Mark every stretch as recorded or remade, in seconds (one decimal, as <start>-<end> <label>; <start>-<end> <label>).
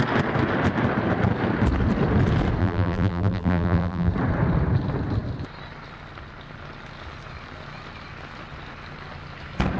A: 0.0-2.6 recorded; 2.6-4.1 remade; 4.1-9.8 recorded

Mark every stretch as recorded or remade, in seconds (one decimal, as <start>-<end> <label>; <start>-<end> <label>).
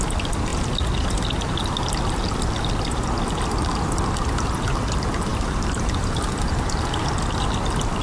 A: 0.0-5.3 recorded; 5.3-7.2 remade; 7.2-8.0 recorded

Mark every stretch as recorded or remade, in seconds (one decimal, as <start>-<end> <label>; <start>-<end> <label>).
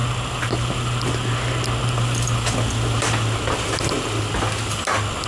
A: 0.0-5.3 recorded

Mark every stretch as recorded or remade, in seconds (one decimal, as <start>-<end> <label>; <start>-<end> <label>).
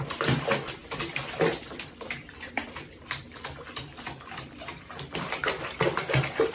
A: 0.0-6.5 remade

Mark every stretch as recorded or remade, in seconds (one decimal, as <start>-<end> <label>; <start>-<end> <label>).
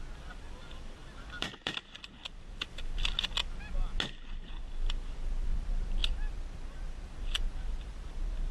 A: 0.0-3.4 remade; 3.4-4.5 recorded; 4.5-8.5 remade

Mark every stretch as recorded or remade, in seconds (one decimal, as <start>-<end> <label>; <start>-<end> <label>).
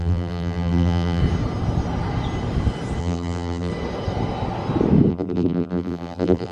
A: 0.0-1.2 remade; 1.2-3.0 recorded; 3.0-3.7 remade; 3.7-5.1 recorded; 5.1-6.5 remade